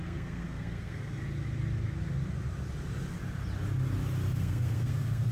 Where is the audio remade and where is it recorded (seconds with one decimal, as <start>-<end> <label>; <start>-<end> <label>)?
0.0-1.2 remade; 1.2-4.4 recorded; 4.4-5.3 remade